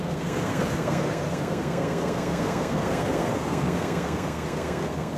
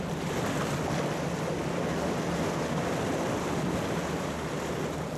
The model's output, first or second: first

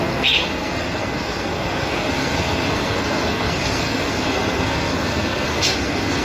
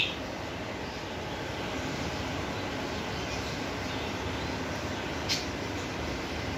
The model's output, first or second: first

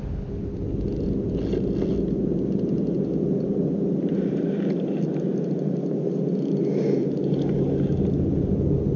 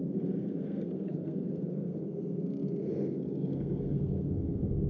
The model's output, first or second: second